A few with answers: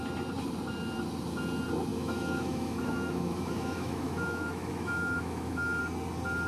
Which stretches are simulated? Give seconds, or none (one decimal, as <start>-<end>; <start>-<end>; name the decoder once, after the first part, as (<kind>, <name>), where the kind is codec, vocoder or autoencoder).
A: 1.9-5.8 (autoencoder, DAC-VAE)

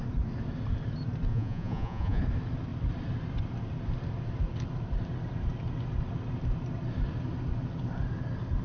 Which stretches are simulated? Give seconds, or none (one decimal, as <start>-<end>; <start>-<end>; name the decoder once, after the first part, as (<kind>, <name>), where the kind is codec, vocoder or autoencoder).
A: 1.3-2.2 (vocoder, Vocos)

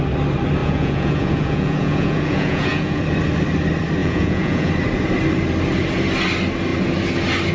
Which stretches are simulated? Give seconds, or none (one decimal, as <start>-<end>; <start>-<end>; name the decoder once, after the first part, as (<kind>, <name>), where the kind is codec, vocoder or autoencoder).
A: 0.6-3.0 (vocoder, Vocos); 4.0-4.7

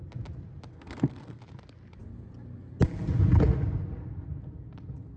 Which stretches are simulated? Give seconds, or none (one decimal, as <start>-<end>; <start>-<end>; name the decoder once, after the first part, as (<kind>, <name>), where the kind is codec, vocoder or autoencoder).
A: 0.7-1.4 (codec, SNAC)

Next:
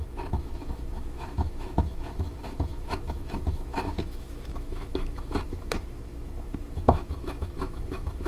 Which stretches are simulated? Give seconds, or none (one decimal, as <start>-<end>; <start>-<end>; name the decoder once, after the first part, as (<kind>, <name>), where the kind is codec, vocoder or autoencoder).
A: 0.0-8.3 (autoencoder, DAC-VAE)

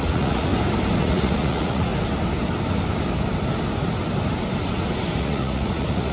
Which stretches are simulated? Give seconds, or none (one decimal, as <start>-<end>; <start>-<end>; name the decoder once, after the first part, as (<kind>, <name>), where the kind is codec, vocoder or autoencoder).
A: 0.0-0.5 (vocoder, Vocos); 1.0-1.9; 5.2-6.1